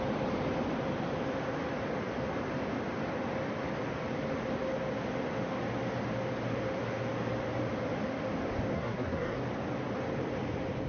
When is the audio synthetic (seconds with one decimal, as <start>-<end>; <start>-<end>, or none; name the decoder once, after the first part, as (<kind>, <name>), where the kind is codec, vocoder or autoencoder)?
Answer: 8.7-9.4 (codec, SNAC)